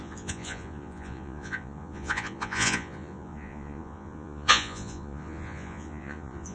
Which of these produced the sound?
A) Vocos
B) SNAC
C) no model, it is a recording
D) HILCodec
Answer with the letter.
A